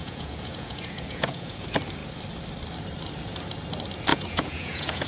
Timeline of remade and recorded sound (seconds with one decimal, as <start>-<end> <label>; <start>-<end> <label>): 0.0-1.6 remade; 1.6-4.1 recorded; 4.1-5.1 remade